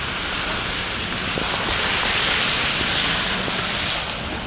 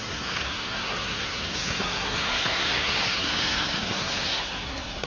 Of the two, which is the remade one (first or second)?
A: second